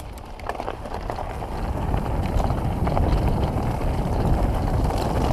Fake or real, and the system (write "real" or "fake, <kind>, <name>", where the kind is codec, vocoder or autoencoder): real